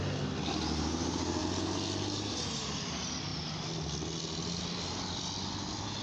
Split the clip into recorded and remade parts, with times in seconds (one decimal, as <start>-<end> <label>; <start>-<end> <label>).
0.0-6.0 recorded